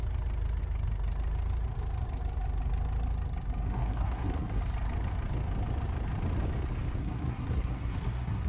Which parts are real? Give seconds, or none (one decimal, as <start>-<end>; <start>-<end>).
0.0-3.6; 4.6-7.0